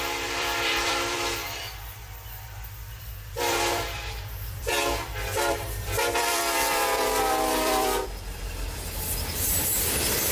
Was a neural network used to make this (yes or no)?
yes